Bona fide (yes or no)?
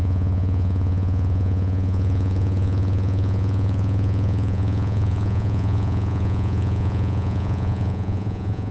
no